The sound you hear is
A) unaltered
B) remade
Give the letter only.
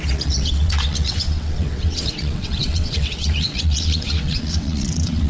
B